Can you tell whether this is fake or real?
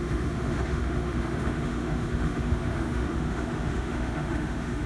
fake